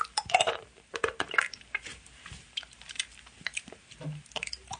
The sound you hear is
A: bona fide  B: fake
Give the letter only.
B